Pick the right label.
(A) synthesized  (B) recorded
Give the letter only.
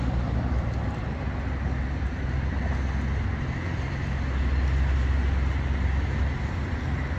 B